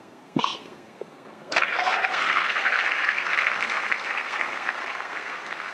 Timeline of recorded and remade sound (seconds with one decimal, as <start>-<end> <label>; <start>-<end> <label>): 0.0-5.7 remade